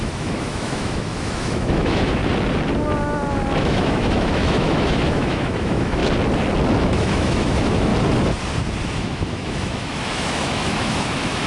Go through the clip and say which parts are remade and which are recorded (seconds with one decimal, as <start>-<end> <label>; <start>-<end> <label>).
0.0-2.2 remade; 2.2-3.6 recorded; 3.6-6.0 remade; 6.0-6.8 recorded; 6.8-7.9 remade; 7.9-9.0 recorded; 9.0-11.5 remade